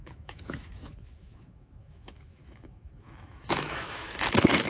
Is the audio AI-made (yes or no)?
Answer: yes